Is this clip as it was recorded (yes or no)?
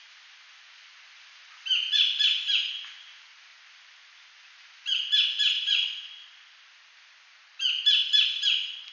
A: yes